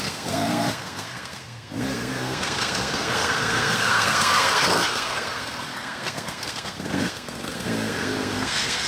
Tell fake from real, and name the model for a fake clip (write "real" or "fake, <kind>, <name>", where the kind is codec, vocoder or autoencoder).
fake, codec, SNAC